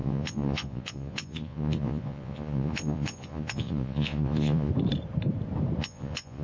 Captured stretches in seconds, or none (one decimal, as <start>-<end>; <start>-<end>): 4.7-5.8